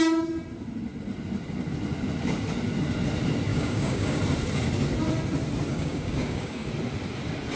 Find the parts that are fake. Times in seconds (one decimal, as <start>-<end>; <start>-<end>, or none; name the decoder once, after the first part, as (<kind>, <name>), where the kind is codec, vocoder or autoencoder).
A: 3.5-4.2 (codec, DAC); 5.7-6.7